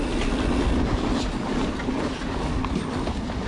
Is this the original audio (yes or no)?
yes